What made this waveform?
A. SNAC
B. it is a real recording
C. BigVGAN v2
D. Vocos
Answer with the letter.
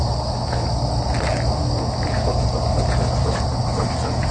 B